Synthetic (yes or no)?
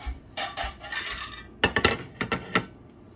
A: no